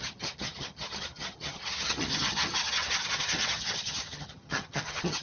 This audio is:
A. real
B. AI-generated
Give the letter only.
B